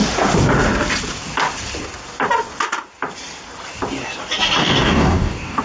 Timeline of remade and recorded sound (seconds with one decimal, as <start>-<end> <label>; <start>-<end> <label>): 0.0-4.6 recorded; 4.6-5.6 remade